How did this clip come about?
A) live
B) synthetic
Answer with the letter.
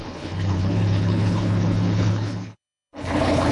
B